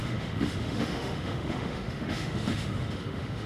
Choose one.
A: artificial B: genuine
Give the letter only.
A